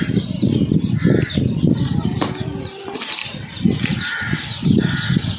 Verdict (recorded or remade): recorded